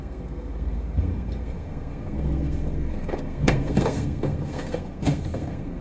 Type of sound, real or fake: fake